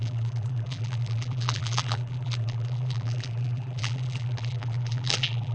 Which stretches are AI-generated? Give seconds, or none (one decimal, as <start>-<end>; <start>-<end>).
0.0-5.5